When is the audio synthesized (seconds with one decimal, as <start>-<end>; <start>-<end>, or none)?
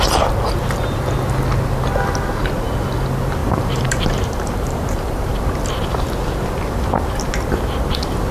3.4-5.3